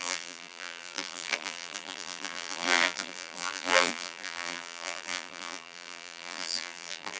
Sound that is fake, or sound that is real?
fake